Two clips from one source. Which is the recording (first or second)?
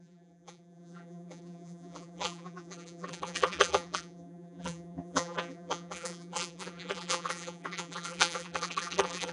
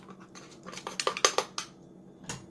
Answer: second